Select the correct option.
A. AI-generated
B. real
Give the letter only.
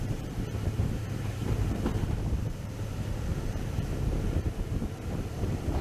A